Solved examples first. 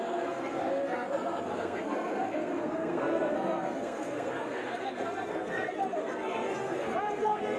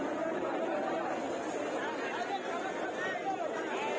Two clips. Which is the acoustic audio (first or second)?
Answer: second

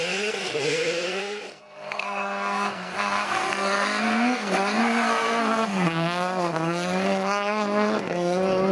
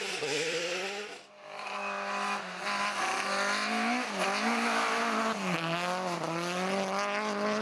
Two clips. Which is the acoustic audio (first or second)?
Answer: second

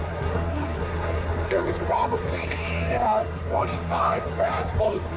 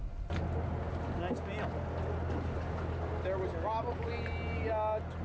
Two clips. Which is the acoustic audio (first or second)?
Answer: second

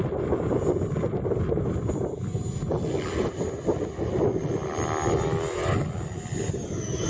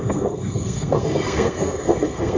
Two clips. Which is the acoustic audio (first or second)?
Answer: first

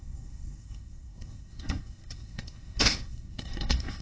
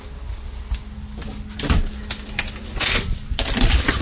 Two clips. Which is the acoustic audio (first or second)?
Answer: second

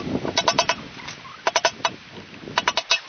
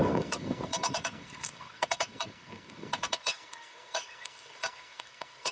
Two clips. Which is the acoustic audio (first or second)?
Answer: first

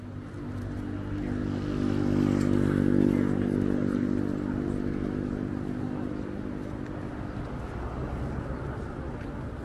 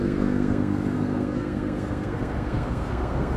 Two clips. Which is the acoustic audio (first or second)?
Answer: first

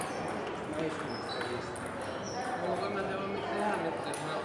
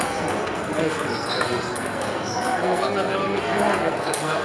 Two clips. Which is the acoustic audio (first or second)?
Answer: first